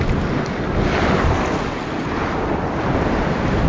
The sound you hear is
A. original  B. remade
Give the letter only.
A